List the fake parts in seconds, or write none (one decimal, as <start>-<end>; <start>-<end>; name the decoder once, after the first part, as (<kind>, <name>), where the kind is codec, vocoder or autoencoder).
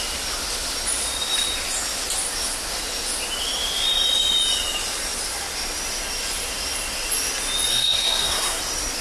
7.7-8.6 (codec, SNAC)